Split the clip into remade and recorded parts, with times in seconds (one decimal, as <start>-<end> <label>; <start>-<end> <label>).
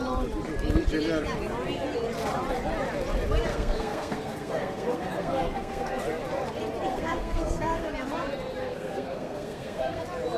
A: 0.0-3.5 recorded; 3.5-6.0 remade; 6.0-6.9 recorded; 6.9-7.9 remade; 7.9-8.6 recorded; 8.6-10.0 remade; 10.0-10.4 recorded